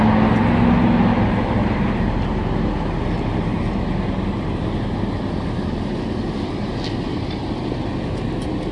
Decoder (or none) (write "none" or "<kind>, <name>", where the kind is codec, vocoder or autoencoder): none